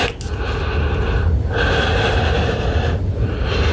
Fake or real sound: real